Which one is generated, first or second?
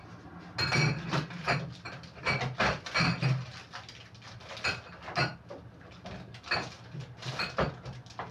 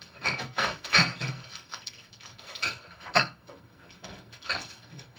second